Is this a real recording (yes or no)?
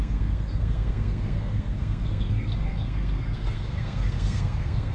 no